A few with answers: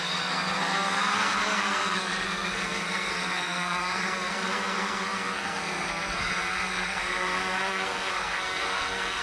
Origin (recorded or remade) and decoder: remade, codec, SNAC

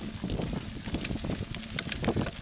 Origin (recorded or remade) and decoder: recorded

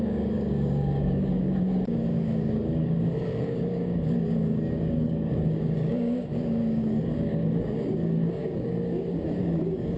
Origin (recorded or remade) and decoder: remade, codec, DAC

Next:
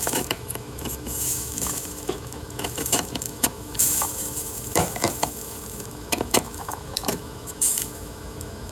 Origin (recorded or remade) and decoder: remade, autoencoder, DAC-VAE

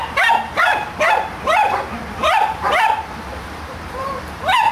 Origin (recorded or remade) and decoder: remade, vocoder, BigVGAN v2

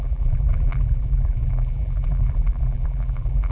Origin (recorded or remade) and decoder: remade, vocoder, BigVGAN v2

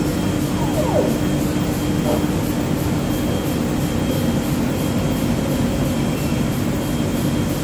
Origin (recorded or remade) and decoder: recorded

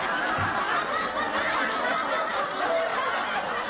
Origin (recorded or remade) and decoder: recorded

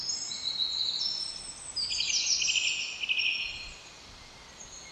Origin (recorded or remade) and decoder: recorded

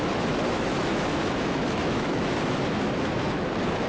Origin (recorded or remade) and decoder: remade, autoencoder, DAC-VAE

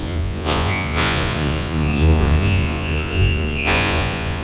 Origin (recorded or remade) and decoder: remade, vocoder, Vocos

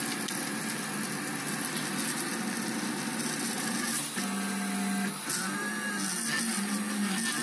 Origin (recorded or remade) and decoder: recorded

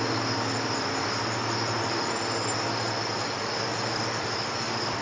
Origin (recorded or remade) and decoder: remade, vocoder, BigVGAN v2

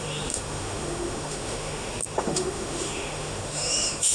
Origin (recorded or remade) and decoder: remade, autoencoder, DAC-VAE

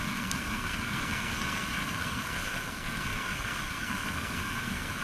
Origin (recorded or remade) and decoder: remade, codec, SNAC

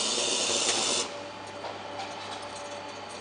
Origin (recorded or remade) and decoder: recorded